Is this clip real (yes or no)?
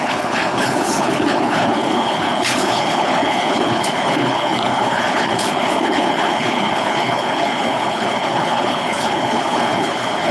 no